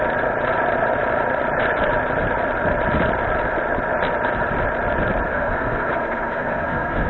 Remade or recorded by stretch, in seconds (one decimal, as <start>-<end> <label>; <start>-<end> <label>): 0.0-5.3 recorded; 5.3-7.1 remade